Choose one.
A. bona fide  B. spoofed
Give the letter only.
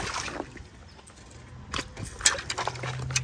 A